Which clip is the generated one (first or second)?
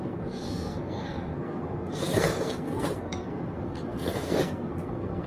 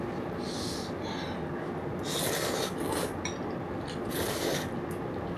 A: first